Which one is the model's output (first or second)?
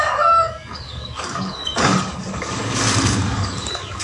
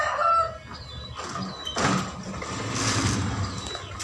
first